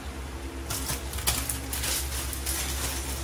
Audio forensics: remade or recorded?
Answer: recorded